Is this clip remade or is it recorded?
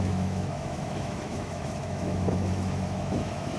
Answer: remade